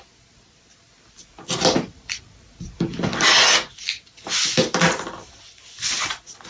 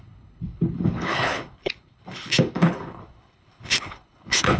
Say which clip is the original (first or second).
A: first